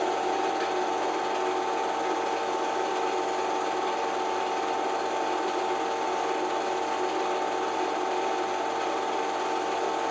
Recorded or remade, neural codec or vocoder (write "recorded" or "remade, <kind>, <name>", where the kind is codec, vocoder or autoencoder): recorded